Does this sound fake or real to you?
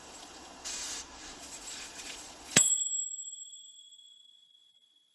fake